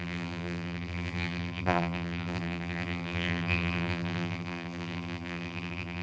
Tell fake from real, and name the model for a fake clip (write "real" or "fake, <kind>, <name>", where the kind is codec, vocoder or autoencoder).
fake, vocoder, BigVGAN v2